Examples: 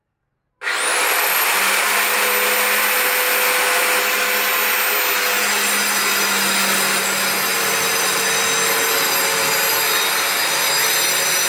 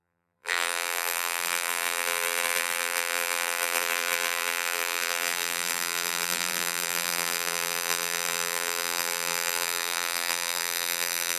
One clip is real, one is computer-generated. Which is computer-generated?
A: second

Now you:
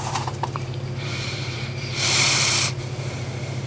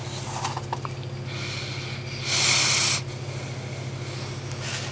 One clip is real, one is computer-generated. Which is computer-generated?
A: first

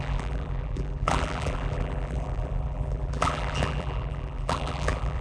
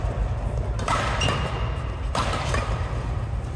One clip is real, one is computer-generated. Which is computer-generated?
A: first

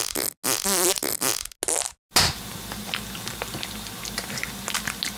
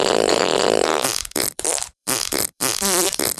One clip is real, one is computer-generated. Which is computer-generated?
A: second